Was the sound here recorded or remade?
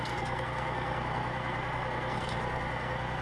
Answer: remade